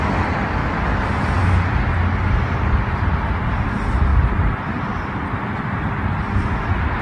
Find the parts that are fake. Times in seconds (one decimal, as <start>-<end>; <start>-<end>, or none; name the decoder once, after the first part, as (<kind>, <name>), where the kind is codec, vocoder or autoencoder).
none